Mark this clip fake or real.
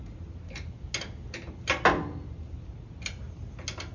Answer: real